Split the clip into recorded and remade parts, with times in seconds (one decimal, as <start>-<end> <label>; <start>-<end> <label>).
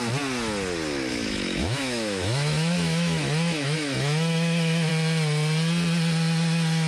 0.0-1.1 recorded; 1.1-4.9 remade; 4.9-6.9 recorded